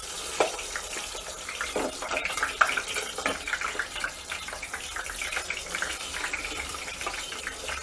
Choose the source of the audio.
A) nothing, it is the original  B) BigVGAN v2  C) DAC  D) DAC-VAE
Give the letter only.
B